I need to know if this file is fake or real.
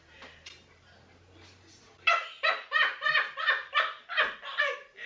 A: real